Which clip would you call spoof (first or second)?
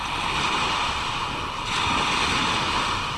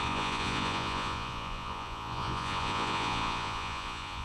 second